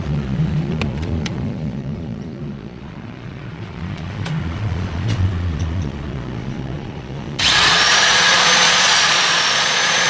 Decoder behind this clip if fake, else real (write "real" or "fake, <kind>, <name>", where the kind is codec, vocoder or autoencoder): fake, vocoder, Vocos